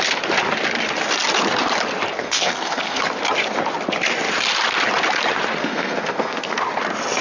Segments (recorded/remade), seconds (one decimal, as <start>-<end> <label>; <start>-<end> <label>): 0.0-2.2 recorded; 2.2-3.0 remade; 3.0-5.6 recorded; 5.6-6.6 remade; 6.6-7.2 recorded